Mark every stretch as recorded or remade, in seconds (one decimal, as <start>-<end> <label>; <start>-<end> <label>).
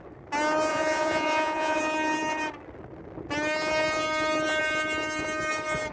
0.0-0.7 recorded; 0.7-1.8 remade; 1.8-5.9 recorded